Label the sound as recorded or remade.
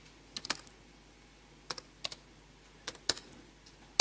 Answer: recorded